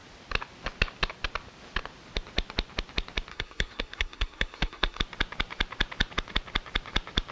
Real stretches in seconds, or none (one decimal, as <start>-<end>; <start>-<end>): 0.0-3.3; 5.0-7.3